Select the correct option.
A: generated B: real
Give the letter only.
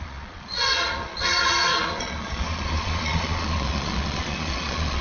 A